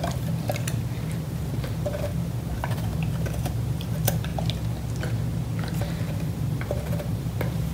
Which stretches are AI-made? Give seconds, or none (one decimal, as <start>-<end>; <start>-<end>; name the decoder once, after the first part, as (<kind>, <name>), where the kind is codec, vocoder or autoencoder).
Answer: 0.0-4.3 (vocoder, BigVGAN v2); 5.8-7.7